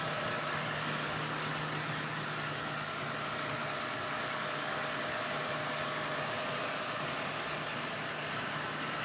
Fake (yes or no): yes